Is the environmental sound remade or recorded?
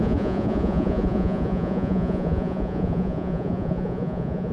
remade